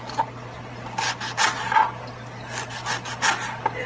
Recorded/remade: recorded